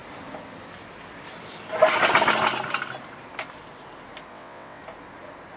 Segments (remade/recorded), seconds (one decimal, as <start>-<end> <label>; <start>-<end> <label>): 0.0-4.3 recorded; 4.3-4.8 remade; 4.8-5.6 recorded